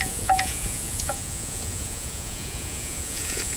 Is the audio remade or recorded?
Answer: remade